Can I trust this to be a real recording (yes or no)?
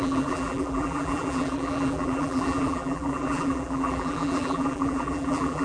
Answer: no